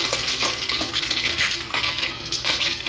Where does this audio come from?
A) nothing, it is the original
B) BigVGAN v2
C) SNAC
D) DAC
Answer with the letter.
C